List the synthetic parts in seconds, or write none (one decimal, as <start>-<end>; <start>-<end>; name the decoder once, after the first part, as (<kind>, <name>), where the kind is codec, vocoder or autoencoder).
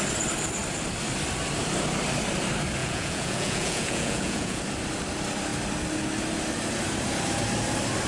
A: 2.8-4.6 (vocoder, Vocos)